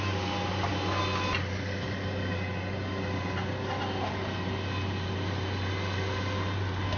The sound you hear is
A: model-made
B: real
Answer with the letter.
B